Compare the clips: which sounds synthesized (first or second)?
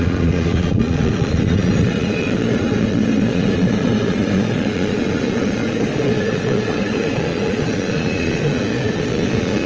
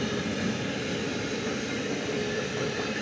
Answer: first